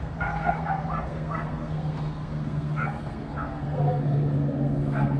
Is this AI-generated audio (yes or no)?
yes